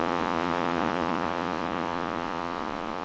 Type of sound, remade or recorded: remade